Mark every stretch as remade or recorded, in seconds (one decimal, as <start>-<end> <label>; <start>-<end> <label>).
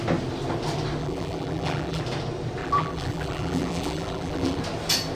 0.0-1.0 recorded; 1.0-2.0 remade; 2.0-2.6 recorded; 2.6-4.6 remade; 4.6-5.2 recorded